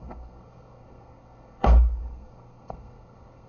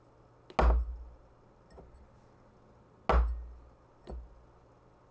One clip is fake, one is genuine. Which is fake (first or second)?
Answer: first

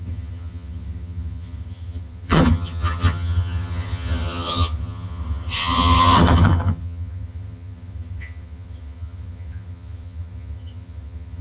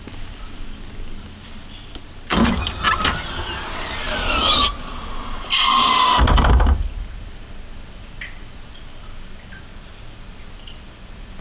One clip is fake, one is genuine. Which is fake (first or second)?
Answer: first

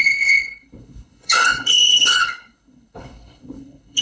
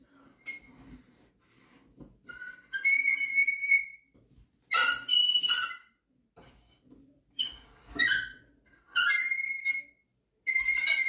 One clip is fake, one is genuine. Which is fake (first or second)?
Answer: first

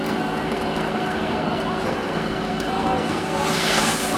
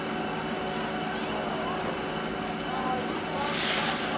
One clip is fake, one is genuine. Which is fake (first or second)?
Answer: first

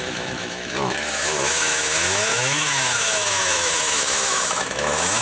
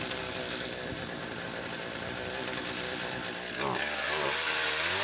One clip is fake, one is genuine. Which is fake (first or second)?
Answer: first